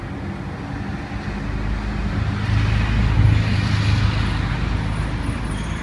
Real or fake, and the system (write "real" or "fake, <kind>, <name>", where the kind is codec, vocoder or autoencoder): real